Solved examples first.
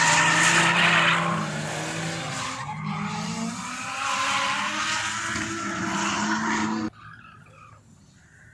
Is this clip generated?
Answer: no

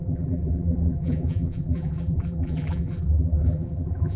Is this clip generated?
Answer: yes